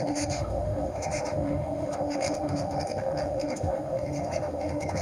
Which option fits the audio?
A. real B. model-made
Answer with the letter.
B